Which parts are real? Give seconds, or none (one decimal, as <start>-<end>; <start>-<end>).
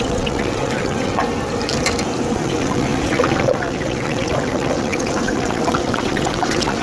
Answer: 1.2-2.3